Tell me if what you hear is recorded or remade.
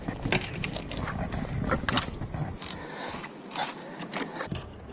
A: recorded